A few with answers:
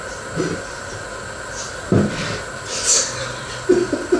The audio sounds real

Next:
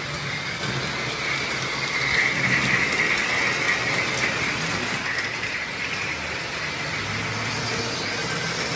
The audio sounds real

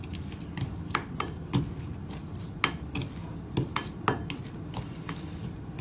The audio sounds real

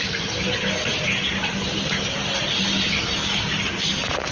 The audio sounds real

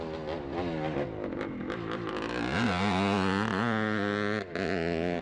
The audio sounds real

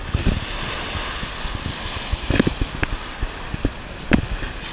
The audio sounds real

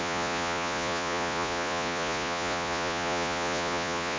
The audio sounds fake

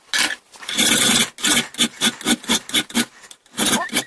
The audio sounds real